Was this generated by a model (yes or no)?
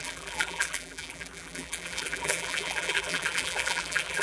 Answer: yes